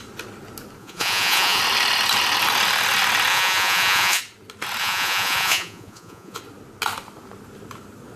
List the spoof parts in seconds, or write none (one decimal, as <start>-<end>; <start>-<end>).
0.8-1.6; 3.3-4.2; 4.8-6.4